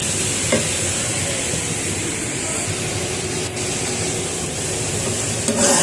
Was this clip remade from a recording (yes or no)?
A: no